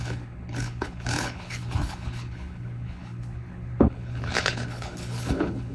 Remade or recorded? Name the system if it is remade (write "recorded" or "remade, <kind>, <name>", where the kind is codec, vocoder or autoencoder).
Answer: remade, codec, HILCodec